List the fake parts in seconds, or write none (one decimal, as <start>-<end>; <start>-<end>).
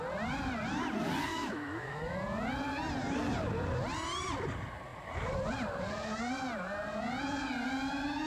1.3-2.0